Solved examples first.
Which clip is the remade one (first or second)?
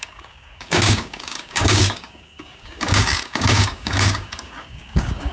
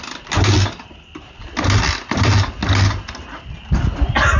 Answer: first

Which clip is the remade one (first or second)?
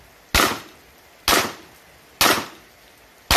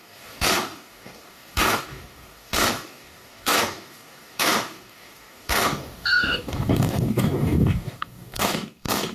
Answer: second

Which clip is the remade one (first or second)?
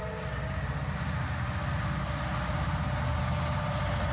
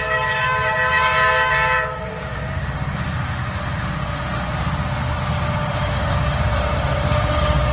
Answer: second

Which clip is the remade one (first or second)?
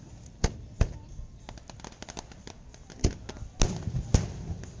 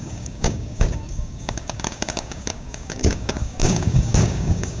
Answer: second